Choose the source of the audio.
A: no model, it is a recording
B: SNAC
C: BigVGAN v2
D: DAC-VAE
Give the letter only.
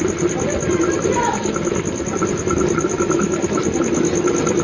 A